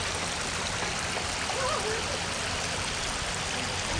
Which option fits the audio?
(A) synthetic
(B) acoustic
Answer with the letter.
B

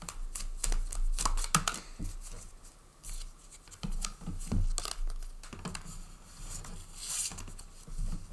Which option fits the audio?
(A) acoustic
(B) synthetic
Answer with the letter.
A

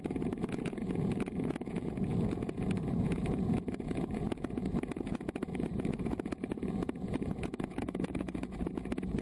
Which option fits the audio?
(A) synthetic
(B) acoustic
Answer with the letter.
A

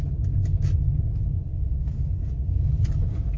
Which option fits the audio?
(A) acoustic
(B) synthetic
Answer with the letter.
A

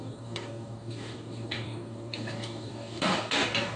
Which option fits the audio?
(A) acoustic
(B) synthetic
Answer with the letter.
B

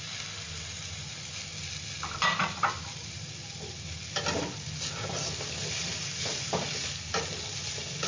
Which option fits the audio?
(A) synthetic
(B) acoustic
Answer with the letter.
B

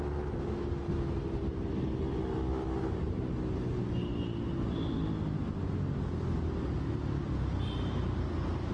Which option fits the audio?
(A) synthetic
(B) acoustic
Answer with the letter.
B